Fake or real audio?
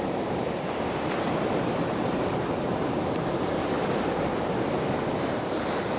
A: fake